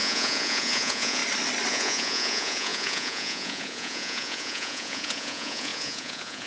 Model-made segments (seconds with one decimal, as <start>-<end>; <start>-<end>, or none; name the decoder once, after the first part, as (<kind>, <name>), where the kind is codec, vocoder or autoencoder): 0.0-1.2 (vocoder, Vocos); 1.7-6.5